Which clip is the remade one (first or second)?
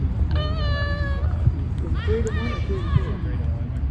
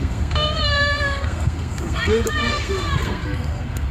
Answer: second